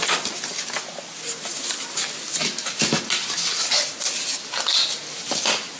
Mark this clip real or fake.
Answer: real